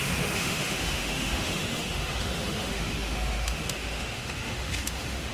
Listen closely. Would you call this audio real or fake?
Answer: fake